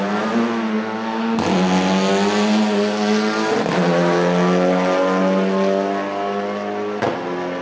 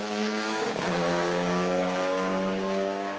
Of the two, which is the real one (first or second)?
first